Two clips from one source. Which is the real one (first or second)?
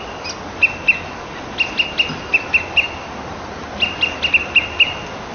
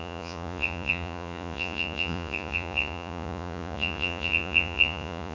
first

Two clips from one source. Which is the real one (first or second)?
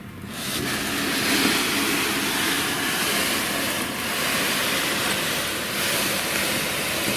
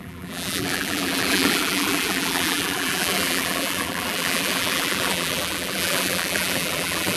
first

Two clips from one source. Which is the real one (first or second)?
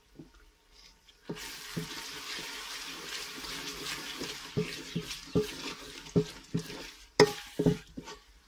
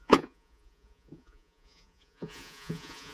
first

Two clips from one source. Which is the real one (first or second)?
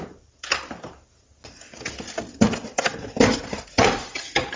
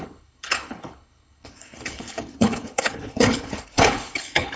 first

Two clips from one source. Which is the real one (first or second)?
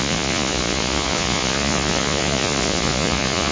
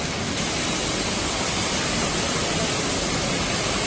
second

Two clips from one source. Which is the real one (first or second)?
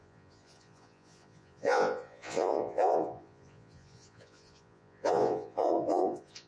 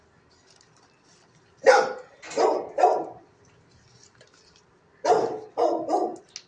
second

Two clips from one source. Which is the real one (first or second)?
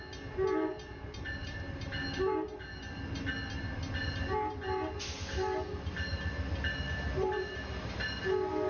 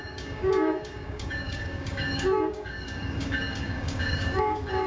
first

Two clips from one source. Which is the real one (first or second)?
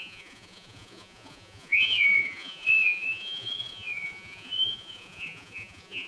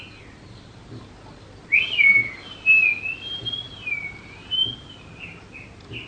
second